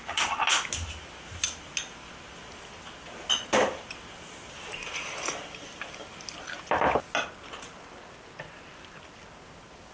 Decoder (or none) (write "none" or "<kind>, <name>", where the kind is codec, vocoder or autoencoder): none